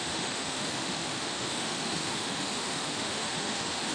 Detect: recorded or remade remade